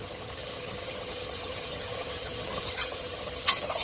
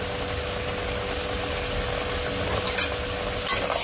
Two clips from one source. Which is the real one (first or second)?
second